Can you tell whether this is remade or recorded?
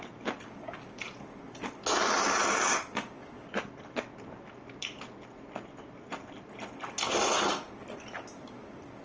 recorded